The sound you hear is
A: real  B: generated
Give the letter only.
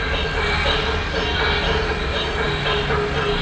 A